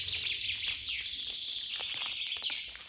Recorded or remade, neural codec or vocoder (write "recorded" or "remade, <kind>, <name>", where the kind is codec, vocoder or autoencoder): remade, vocoder, BigVGAN v2